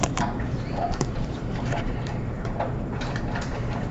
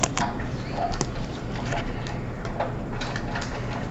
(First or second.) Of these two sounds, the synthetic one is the first